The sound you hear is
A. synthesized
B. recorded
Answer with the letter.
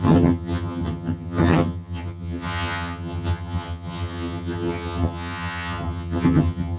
A